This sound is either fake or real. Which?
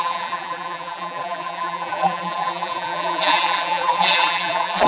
fake